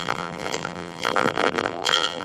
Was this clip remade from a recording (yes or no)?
yes